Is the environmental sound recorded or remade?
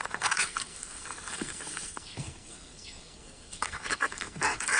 remade